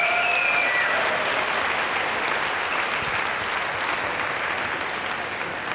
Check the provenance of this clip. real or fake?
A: real